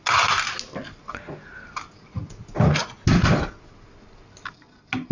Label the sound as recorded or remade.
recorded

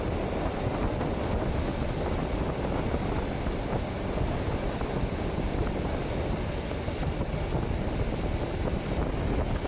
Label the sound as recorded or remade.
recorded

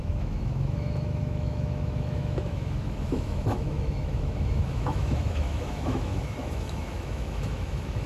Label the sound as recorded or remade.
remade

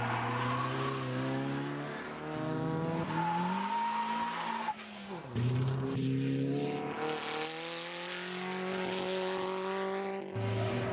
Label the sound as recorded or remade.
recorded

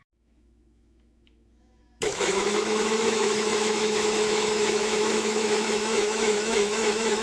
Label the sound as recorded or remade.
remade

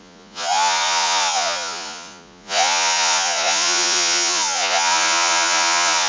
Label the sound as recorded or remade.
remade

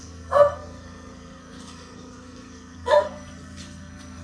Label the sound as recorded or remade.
remade